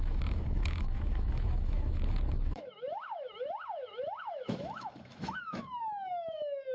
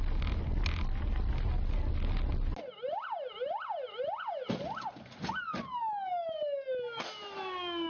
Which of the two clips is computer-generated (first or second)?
first